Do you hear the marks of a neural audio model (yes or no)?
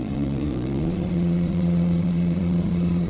yes